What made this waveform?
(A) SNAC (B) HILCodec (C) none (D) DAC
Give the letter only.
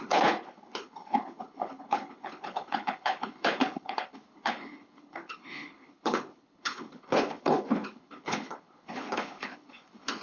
B